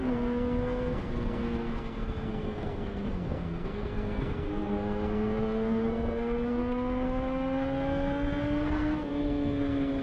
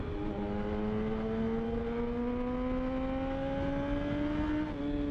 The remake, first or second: first